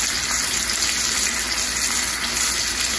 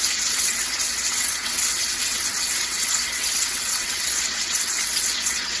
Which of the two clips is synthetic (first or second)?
second